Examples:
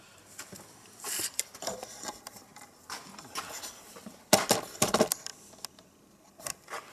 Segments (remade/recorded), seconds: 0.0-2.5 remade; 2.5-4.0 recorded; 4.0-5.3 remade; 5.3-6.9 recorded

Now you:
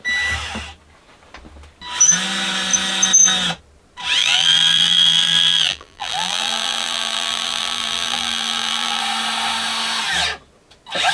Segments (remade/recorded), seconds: 0.0-4.2 recorded; 4.2-9.0 remade; 9.0-11.1 recorded

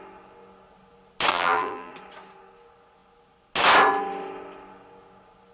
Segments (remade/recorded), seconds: 0.0-1.3 recorded; 1.3-1.9 remade; 1.9-5.5 recorded

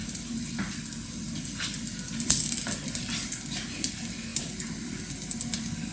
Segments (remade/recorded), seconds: 0.0-3.0 remade; 3.0-4.3 recorded; 4.3-5.1 remade; 5.1-5.9 recorded

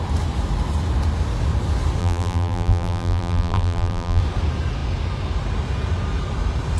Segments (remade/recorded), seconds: 0.0-2.0 recorded; 2.0-4.2 remade; 4.2-6.8 recorded

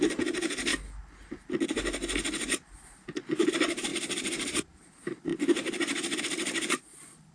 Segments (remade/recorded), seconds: 0.0-0.7 remade; 0.7-3.5 recorded; 3.5-3.9 remade; 3.9-4.6 recorded; 4.6-7.3 remade

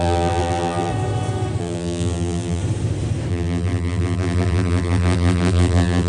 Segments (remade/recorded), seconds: 0.0-0.9 remade; 0.9-1.6 recorded; 1.6-2.6 remade; 2.6-3.3 recorded; 3.3-6.1 remade